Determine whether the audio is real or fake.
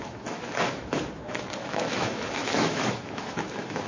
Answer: fake